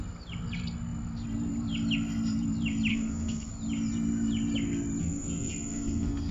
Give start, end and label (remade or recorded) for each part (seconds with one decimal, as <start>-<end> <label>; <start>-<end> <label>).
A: 0.0-2.9 recorded; 2.9-3.5 remade; 3.5-5.0 recorded; 5.0-6.3 remade